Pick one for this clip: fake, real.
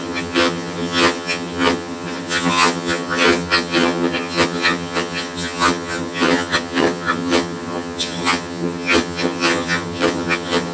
fake